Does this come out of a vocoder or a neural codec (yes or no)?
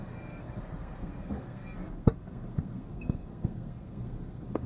yes